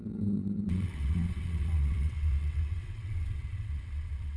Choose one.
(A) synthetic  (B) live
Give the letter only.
A